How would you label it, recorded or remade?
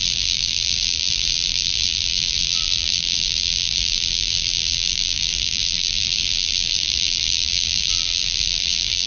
remade